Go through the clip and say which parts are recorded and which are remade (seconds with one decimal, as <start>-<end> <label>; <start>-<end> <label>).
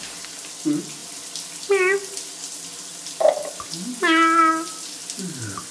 0.0-5.7 recorded